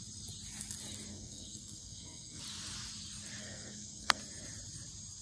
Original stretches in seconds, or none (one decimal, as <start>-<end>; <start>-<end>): 0.0-1.1; 2.4-3.4; 4.2-5.2